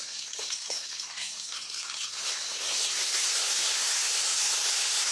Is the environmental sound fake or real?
fake